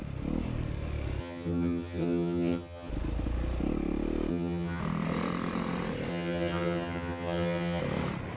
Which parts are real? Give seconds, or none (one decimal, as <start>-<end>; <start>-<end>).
0.0-1.2; 2.9-4.3; 4.8-6.1; 7.8-8.4